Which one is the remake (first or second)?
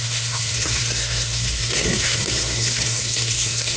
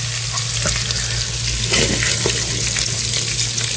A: first